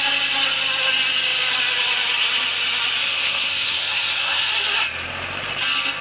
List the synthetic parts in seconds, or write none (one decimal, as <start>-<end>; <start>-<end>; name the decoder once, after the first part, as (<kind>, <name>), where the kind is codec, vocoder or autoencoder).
3.0-4.5 (codec, SNAC)